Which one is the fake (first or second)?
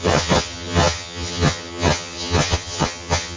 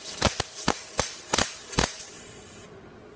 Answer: first